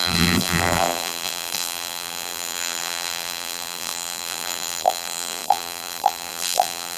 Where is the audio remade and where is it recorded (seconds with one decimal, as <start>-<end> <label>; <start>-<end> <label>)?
0.0-7.0 remade